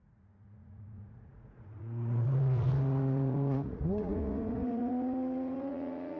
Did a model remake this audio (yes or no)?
yes